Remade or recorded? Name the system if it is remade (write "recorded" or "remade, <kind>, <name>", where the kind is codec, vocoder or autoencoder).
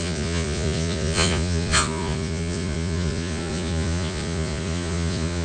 remade, vocoder, Vocos